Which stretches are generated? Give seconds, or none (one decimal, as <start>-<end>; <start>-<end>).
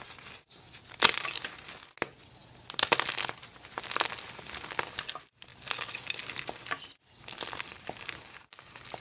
5.5-7.2